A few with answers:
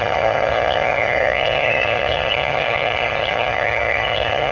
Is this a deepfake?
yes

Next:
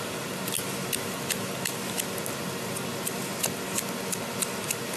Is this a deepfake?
no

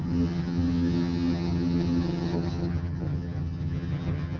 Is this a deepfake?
yes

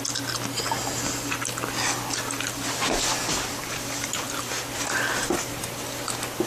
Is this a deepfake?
no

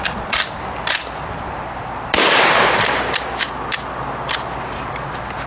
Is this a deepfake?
no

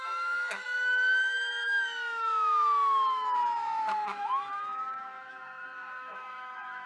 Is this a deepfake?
yes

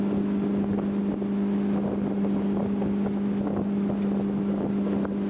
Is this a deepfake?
no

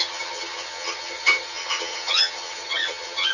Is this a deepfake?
yes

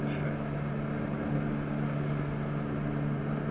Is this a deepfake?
no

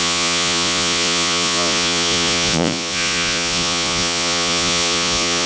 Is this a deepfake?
yes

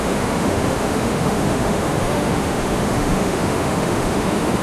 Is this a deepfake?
yes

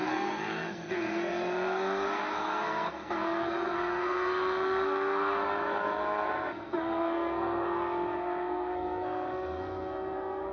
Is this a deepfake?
yes